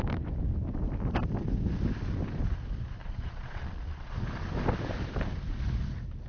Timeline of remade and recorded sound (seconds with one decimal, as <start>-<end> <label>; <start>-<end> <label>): 0.0-3.0 recorded; 3.0-4.1 remade; 4.1-6.3 recorded